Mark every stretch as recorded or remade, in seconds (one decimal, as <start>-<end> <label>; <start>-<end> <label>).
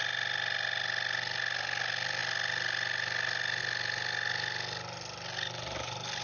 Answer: 0.0-6.2 recorded